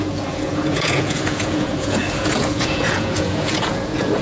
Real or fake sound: fake